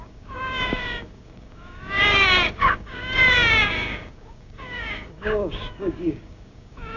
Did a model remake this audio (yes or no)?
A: yes